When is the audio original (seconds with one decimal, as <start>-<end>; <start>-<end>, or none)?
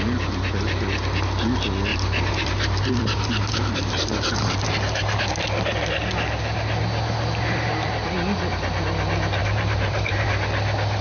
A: 0.0-1.9; 5.3-9.4; 10.3-11.0